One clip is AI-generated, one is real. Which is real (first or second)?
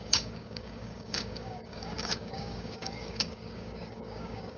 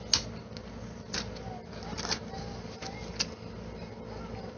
second